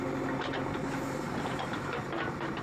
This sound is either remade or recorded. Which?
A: remade